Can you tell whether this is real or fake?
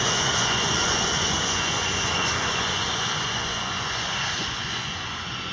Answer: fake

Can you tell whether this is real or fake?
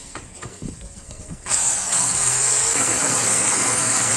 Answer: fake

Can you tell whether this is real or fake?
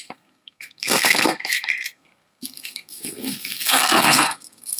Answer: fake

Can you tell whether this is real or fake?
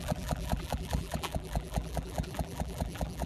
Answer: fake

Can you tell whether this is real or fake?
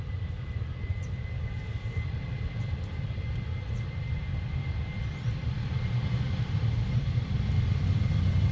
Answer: fake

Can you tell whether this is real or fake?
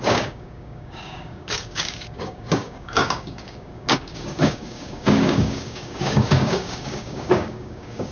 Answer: fake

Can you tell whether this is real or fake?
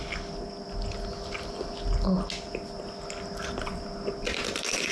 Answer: real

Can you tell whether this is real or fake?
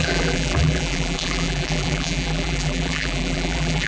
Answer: fake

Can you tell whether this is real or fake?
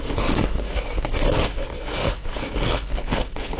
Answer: fake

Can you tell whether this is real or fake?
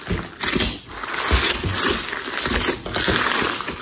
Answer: real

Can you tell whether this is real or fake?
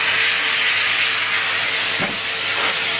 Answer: real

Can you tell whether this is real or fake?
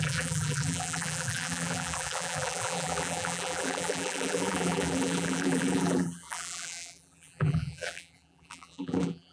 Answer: fake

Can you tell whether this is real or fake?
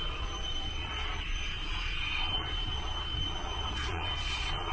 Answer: fake